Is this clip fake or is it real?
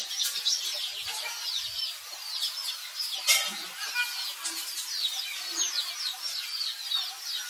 real